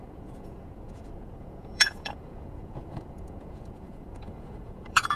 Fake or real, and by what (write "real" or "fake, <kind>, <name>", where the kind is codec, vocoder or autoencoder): fake, vocoder, Vocos